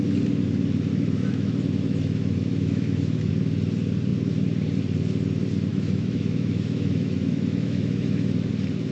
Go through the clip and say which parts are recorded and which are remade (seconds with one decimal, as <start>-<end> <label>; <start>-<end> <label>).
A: 0.0-0.9 recorded; 0.9-3.3 remade; 3.3-5.7 recorded; 5.7-8.5 remade; 8.5-8.9 recorded